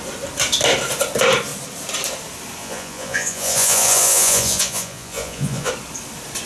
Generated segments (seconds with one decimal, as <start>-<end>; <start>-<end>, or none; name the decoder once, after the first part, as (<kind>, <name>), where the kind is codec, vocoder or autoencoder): 2.6-5.7 (vocoder, Vocos)